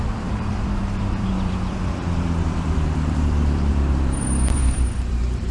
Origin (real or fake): fake